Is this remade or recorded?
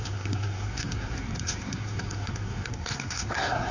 remade